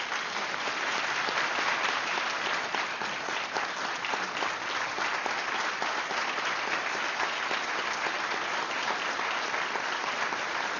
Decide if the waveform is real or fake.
fake